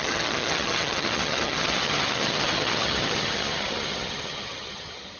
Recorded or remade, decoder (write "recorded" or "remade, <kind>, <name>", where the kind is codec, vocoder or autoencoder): remade, vocoder, HiFi-GAN